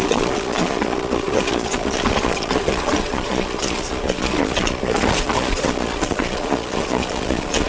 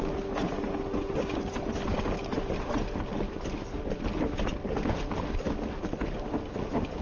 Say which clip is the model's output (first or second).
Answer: first